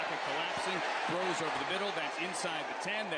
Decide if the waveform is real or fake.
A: real